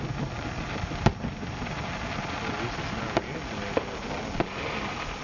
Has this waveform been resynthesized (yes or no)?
no